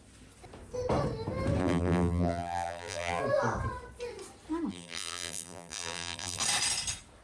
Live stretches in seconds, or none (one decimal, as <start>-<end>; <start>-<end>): 0.0-1.6; 3.2-4.7; 6.4-7.2